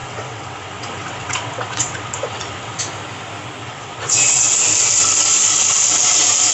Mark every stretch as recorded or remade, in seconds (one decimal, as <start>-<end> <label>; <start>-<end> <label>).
0.0-2.8 remade; 2.8-3.6 recorded; 3.6-4.5 remade; 4.5-6.5 recorded